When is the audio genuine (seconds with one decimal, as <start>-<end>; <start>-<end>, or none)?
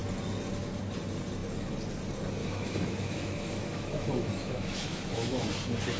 0.0-2.4; 5.5-6.0